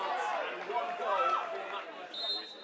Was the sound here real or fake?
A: real